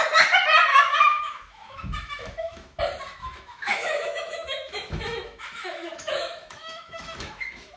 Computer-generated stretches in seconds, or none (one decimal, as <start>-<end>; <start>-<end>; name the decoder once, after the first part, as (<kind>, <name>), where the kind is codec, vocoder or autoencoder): 0.7-2.8 (autoencoder, DAC-VAE); 3.2-7.8

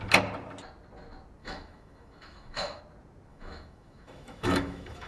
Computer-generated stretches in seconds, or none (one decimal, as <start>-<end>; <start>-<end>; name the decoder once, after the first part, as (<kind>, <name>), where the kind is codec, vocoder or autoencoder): 1.4-2.8 (autoencoder, DAC-VAE); 3.3-5.1